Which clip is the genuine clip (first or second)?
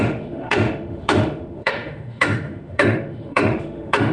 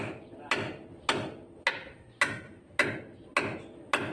second